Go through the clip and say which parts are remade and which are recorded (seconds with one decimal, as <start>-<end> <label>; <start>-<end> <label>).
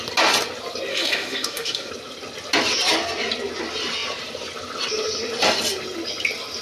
0.0-0.9 recorded; 0.9-1.9 remade; 1.9-6.6 recorded